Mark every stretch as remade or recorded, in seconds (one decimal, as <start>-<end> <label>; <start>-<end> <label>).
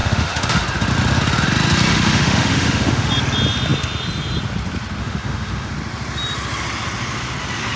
0.0-0.6 remade; 0.6-1.9 recorded; 1.9-3.1 remade; 3.1-5.0 recorded; 5.0-5.7 remade; 5.7-7.8 recorded